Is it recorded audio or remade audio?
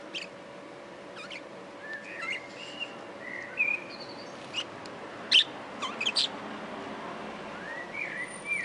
recorded